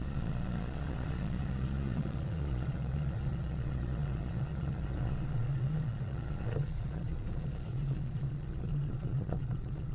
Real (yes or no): no